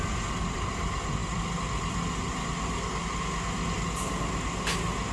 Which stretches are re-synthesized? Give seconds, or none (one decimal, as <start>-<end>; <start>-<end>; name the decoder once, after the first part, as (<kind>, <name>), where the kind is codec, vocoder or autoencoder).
none